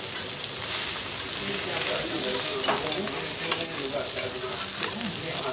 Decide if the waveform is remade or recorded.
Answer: recorded